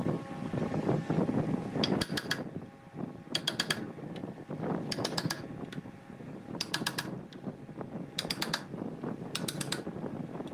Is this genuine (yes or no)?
yes